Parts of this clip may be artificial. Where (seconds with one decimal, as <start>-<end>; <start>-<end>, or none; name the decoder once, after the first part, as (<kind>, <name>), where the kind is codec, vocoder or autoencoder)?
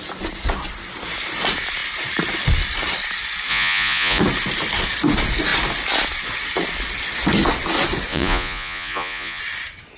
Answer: 3.5-4.2 (vocoder, Vocos); 8.1-9.4